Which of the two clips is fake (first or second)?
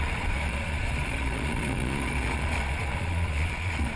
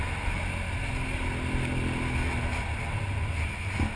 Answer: first